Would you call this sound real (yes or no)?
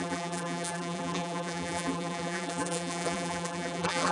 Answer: no